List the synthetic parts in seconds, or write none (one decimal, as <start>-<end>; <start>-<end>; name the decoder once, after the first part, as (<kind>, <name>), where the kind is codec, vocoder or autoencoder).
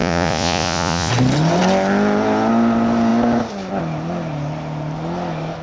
0.0-1.1 (vocoder, Vocos)